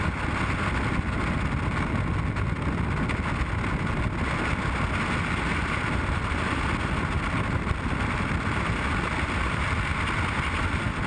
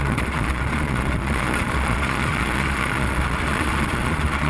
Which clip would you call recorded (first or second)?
first